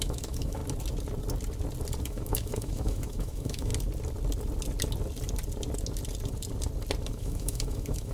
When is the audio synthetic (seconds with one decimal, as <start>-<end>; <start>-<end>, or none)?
0.0-0.6; 2.0-3.7; 7.1-8.1